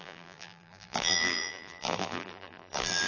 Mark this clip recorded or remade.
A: remade